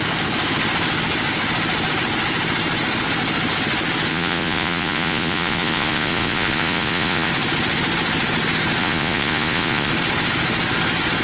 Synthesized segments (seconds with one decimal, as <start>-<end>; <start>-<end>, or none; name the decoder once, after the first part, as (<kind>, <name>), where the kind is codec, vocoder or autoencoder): 4.1-7.3 (vocoder, Vocos); 8.8-9.9